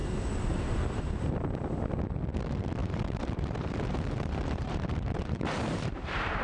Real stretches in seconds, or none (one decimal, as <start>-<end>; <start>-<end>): 1.0-2.8